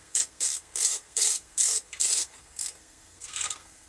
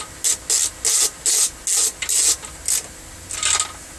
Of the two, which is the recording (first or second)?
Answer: second